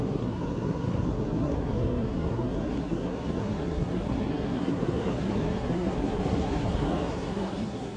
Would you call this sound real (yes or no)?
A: no